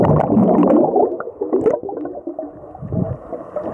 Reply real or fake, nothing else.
real